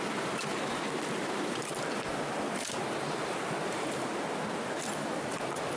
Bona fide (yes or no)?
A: yes